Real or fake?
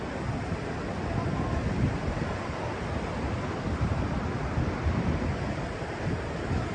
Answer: real